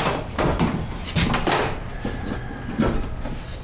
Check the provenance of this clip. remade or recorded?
recorded